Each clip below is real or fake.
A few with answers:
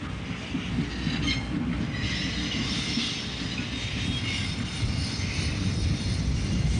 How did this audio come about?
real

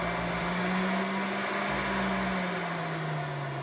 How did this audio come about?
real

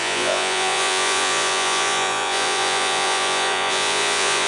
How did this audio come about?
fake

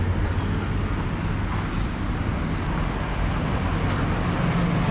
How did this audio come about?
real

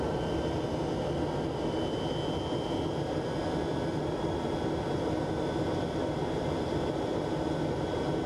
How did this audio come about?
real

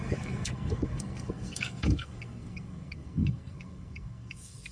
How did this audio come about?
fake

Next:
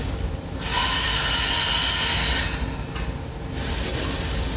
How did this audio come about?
real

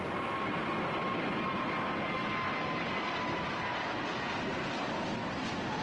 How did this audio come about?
real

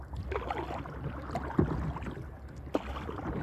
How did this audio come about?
real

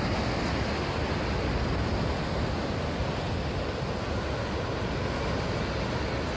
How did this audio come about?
real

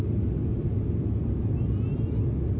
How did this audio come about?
real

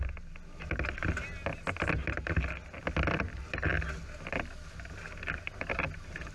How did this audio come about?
real